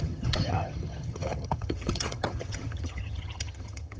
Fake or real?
fake